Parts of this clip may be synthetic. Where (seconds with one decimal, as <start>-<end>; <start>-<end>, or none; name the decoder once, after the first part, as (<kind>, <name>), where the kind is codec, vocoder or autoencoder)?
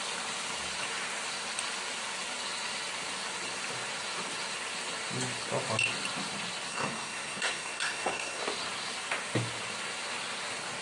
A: 6.7-8.4 (codec, SNAC)